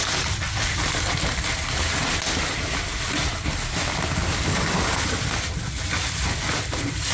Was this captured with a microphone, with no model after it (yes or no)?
yes